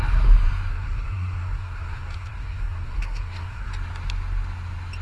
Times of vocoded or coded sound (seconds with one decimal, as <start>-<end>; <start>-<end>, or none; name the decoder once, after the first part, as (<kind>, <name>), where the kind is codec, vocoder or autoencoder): 0.7-3.7 (codec, SNAC)